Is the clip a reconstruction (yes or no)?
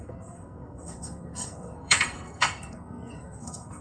yes